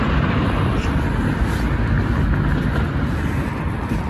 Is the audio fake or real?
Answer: real